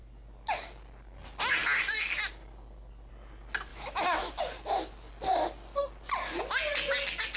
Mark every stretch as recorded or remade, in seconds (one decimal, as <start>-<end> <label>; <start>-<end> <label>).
0.0-3.7 recorded; 3.7-4.4 remade; 4.4-7.4 recorded